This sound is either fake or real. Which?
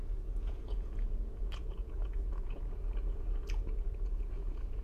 fake